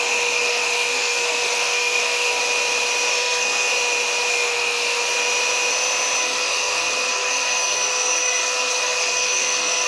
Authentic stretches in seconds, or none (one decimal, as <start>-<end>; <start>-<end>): 2.4-3.1; 3.7-4.3; 5.0-6.2

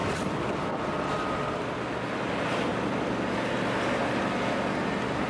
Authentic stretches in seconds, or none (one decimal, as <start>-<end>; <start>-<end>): 1.0-5.3